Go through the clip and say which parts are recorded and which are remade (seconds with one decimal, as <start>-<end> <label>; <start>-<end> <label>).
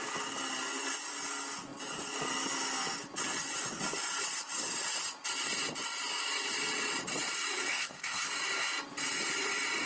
0.0-7.7 recorded; 7.7-8.3 remade; 8.3-9.9 recorded